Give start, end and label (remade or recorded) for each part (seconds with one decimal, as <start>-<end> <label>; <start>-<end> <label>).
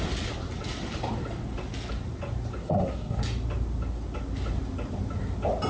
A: 0.0-2.6 recorded; 2.6-3.2 remade; 3.2-5.7 recorded